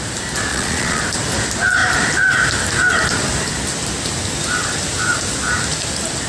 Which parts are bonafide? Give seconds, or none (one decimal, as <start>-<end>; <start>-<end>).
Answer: 0.0-0.5; 1.0-6.3